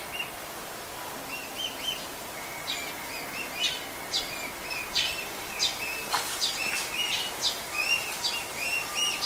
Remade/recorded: recorded